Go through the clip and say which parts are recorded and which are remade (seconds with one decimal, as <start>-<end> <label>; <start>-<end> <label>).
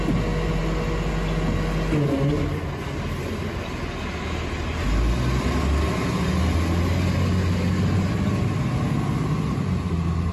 0.0-10.3 recorded